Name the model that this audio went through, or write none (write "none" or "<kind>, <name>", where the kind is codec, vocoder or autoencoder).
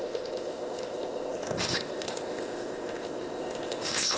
codec, ZipCodec